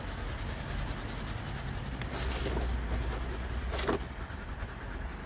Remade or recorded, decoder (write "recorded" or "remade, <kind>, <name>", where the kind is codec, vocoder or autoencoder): recorded